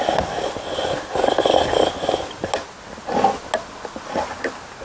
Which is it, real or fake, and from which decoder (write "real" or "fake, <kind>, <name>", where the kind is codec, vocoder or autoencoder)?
real